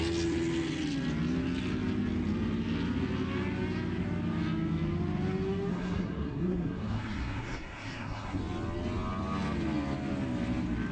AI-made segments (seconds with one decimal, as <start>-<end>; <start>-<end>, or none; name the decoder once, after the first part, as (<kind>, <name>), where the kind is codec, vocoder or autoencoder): 5.7-8.4 (codec, SNAC)